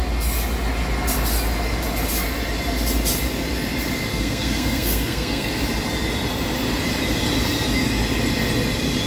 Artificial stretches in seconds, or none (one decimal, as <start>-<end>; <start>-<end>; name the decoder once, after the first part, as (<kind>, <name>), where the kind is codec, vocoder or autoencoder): 4.1-5.5 (codec, SNAC)